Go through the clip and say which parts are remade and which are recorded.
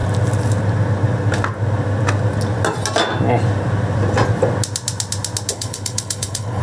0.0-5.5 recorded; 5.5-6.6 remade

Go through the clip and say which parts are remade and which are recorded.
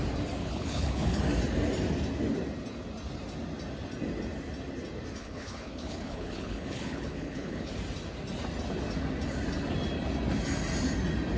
0.0-0.4 recorded; 0.4-1.2 remade; 1.2-5.2 recorded; 5.2-7.7 remade; 7.7-11.4 recorded